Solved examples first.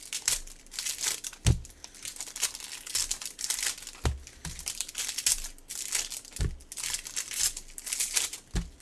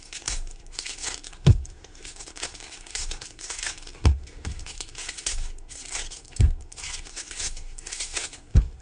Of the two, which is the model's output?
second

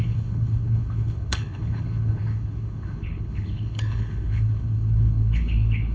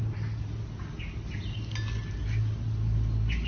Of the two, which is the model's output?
first